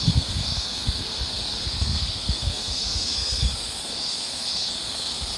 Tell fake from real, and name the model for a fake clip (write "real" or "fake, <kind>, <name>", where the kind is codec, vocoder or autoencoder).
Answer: fake, codec, SNAC